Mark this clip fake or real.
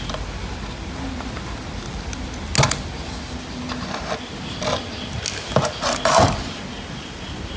real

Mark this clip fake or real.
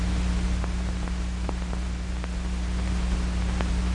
real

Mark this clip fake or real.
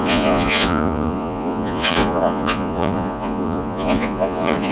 fake